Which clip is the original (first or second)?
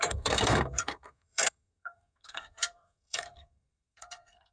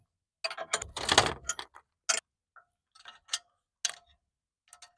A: second